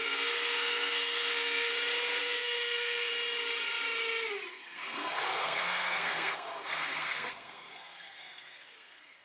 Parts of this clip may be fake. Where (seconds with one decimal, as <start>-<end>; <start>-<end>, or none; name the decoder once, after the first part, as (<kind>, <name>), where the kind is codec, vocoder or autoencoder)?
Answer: 0.0-1.7 (codec, SNAC); 2.2-3.1; 4.5-9.2